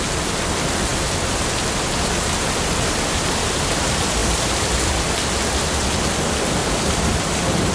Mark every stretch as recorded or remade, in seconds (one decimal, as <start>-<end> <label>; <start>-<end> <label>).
0.0-0.9 recorded; 0.9-3.7 remade; 3.7-4.2 recorded; 4.2-5.1 remade; 5.1-6.6 recorded; 6.6-7.7 remade